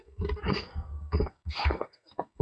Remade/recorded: remade